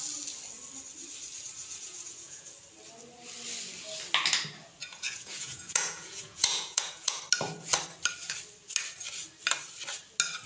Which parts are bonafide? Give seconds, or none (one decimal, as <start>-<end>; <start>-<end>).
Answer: 0.0-1.6; 2.5-4.8; 7.2-10.5